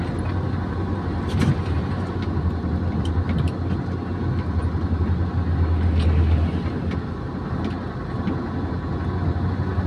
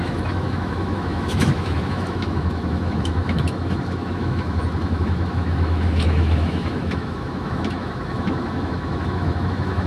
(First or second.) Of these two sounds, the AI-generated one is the second